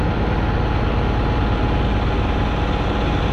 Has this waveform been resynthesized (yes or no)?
no